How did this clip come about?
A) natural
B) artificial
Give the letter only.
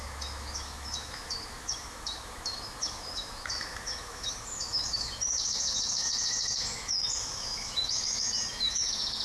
B